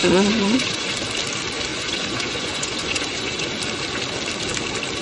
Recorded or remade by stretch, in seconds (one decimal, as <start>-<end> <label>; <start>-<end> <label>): 0.0-0.9 remade; 0.9-1.7 recorded; 1.7-3.6 remade; 3.6-5.0 recorded

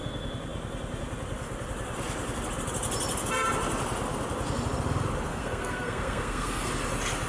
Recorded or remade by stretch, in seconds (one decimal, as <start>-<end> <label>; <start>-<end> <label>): 0.0-5.3 recorded; 5.3-6.7 remade; 6.7-7.3 recorded

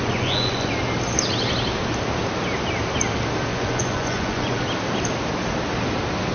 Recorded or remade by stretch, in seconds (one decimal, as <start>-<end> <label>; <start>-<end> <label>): 0.0-0.7 remade; 0.7-3.5 recorded; 3.5-4.6 remade; 4.6-6.3 recorded

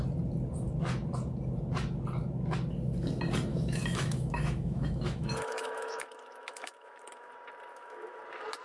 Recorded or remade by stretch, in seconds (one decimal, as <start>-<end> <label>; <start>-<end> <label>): 0.0-3.5 recorded; 3.5-7.3 remade; 7.3-7.7 recorded; 7.7-8.2 remade; 8.2-8.6 recorded

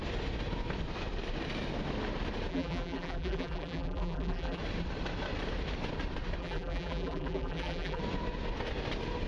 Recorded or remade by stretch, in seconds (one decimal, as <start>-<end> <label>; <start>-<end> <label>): 0.0-2.5 recorded; 2.5-4.6 remade; 4.6-6.4 recorded; 6.4-8.0 remade; 8.0-9.3 recorded

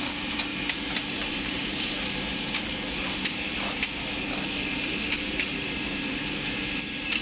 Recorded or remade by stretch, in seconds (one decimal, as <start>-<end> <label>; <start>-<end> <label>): 0.0-0.5 recorded; 0.5-1.9 remade; 1.9-7.2 recorded